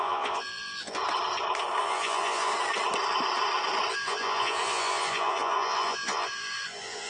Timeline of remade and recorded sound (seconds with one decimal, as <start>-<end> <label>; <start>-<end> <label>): 0.0-1.0 remade; 1.0-1.8 recorded; 1.8-2.5 remade; 2.5-3.9 recorded; 3.9-7.1 remade